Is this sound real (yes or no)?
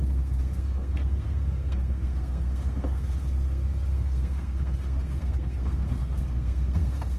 no